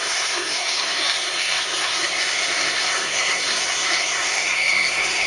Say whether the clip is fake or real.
fake